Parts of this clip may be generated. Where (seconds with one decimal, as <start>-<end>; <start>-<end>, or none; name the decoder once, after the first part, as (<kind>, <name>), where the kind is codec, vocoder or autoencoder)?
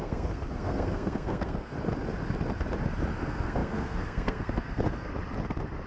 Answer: 0.0-1.7 (codec, SNAC); 3.2-5.1